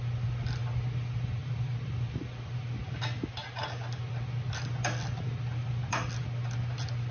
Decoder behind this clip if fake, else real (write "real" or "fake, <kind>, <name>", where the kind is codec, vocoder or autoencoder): real